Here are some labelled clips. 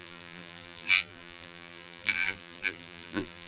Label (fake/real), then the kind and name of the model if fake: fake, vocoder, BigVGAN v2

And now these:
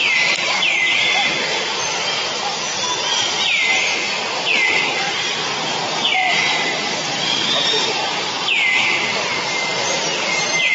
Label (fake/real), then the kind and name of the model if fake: real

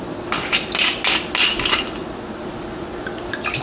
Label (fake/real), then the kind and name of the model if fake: real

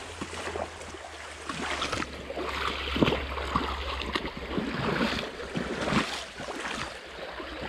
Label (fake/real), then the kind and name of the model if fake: real